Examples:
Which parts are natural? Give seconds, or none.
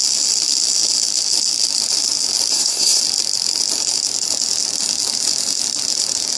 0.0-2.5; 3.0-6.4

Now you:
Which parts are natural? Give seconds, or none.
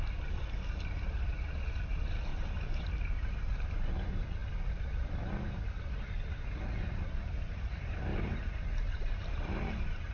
0.0-2.3; 2.9-8.1